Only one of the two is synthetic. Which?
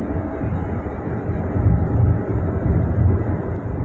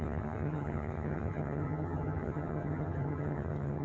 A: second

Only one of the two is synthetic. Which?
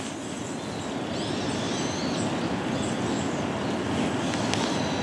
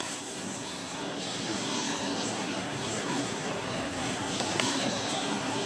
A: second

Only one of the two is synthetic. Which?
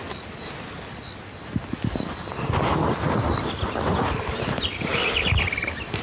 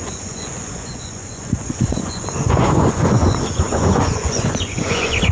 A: second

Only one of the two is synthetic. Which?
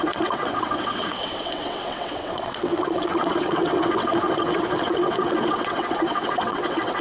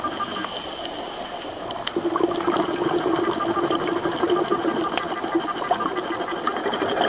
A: first